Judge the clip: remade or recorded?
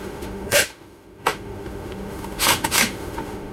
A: remade